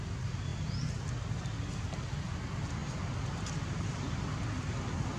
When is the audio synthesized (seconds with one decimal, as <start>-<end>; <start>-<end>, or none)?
none